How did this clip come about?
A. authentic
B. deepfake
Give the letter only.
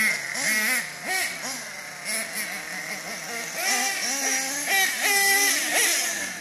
A